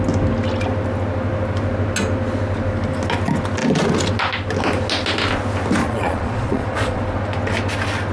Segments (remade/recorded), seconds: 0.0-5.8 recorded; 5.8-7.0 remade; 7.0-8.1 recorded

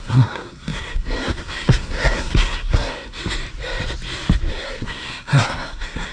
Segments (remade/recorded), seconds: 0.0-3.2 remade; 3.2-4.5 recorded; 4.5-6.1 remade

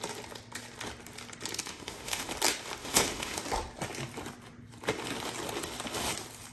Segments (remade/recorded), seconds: 0.0-1.6 recorded; 1.6-2.3 remade; 2.3-2.8 recorded; 2.8-3.4 remade; 3.4-6.5 recorded

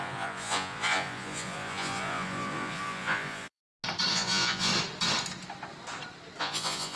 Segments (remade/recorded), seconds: 0.0-3.6 remade; 3.6-4.1 recorded; 4.1-4.7 remade; 4.7-6.4 recorded; 6.4-7.0 remade

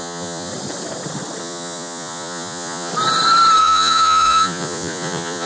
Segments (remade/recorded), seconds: 0.0-0.5 remade; 0.5-1.4 recorded; 1.4-2.9 remade; 2.9-3.6 recorded; 3.6-5.5 remade

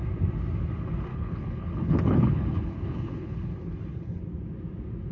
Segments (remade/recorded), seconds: 0.0-1.1 recorded; 1.1-4.2 remade; 4.2-5.1 recorded

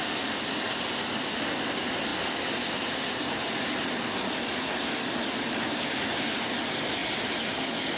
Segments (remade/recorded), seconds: 0.0-8.0 recorded

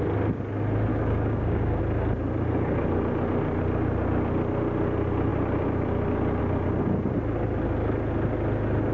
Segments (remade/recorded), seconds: 0.0-0.9 recorded; 0.9-1.8 remade; 1.8-8.9 recorded